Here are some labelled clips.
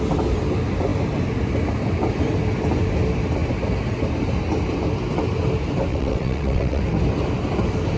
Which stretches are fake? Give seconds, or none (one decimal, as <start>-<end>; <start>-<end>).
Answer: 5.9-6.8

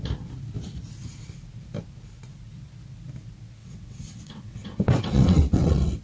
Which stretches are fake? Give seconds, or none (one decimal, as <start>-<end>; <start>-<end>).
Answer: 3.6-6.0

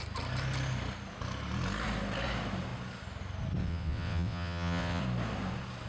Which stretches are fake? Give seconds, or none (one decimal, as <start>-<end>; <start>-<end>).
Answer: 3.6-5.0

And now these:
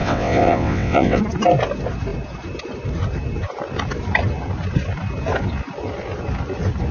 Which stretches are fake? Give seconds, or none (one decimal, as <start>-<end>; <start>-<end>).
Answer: 0.0-1.2

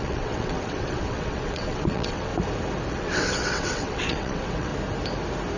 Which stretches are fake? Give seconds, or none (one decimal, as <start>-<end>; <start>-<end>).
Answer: 0.0-2.3; 2.9-4.7

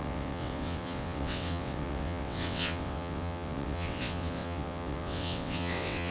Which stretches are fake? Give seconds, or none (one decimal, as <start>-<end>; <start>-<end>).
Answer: 0.0-6.1

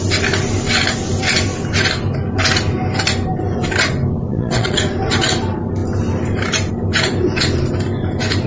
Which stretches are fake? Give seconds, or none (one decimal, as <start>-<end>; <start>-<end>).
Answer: 4.3-4.8